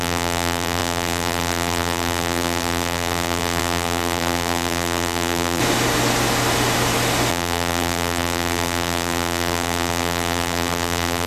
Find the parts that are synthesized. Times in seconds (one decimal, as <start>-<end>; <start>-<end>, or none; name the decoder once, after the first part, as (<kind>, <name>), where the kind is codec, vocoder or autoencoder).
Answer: 0.0-5.6 (vocoder, BigVGAN v2); 7.3-11.3